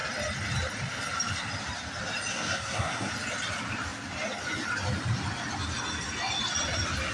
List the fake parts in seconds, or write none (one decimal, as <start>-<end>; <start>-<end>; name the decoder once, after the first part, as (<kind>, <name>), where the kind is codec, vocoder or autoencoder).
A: 2.3-3.1 (codec, SNAC)